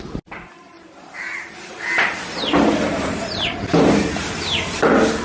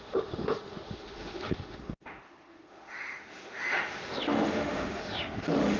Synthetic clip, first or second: second